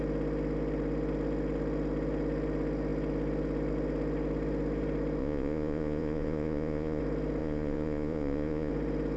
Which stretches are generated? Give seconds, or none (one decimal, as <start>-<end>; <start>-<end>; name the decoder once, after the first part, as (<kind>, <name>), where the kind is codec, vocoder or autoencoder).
5.2-7.0 (vocoder, Vocos); 7.4-8.7